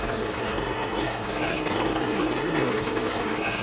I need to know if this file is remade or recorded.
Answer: remade